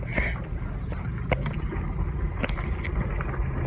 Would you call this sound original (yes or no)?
yes